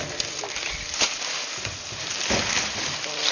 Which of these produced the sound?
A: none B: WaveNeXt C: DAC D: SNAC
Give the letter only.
A